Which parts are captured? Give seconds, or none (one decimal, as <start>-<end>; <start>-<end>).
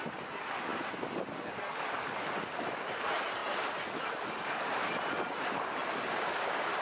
0.0-6.8